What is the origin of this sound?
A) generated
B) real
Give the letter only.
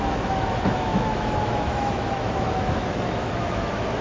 A